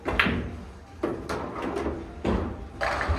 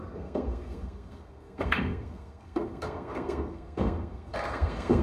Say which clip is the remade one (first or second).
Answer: second